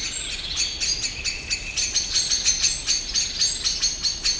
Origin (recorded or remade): recorded